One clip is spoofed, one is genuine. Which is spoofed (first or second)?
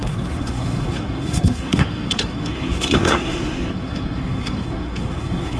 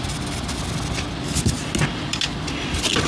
first